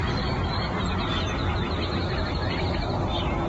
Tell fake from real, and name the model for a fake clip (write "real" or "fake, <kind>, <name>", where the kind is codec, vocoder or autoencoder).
real